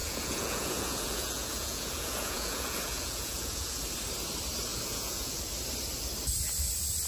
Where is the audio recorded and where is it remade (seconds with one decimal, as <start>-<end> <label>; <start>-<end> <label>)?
0.0-3.8 remade; 3.8-4.7 recorded; 4.7-5.4 remade; 5.4-7.1 recorded